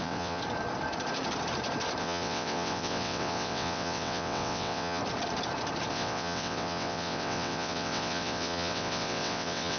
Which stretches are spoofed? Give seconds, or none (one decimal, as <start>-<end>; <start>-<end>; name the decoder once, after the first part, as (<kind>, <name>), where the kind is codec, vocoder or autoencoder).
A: 0.0-0.4 (vocoder, WaveNeXt); 2.0-5.0; 5.9-9.8